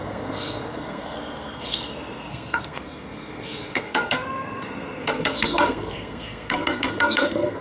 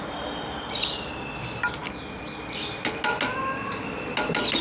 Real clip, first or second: second